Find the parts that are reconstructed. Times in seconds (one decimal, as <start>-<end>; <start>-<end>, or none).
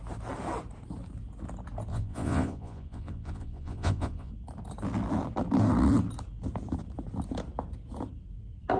1.9-4.3